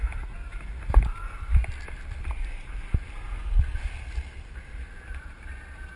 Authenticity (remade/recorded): recorded